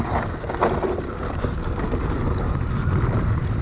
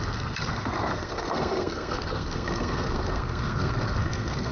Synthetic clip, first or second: second